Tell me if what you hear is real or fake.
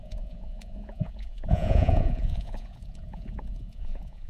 fake